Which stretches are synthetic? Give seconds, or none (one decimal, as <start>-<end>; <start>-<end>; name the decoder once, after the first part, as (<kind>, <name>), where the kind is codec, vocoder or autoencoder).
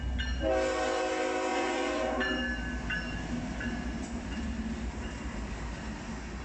1.5-2.2 (vocoder, Vocos)